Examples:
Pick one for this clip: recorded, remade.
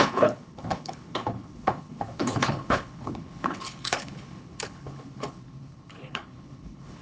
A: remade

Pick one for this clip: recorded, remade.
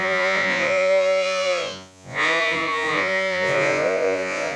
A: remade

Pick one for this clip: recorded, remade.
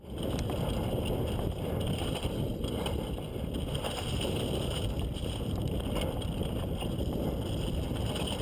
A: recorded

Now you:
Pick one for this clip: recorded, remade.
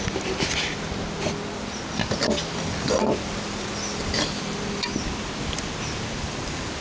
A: recorded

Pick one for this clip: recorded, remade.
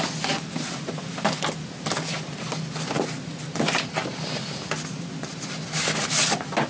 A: recorded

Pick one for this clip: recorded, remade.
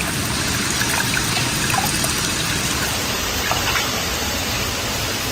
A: recorded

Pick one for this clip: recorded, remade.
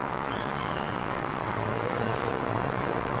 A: remade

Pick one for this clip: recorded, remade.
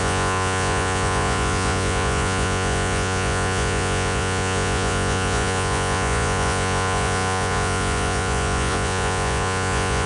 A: remade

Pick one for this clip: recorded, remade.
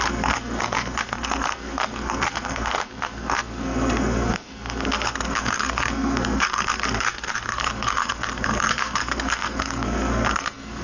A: remade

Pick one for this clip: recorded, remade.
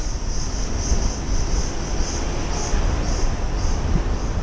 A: recorded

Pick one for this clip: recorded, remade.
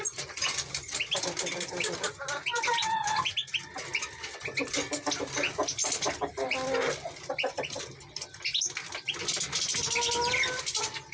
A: recorded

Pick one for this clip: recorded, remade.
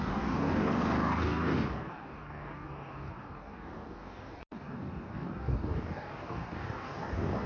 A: remade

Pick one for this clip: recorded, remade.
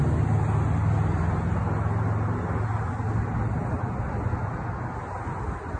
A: recorded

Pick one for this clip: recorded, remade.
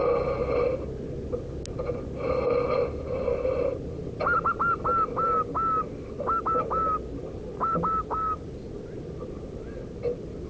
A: recorded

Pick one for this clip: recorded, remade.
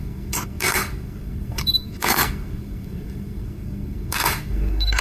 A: remade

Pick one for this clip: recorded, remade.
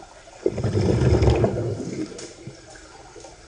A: recorded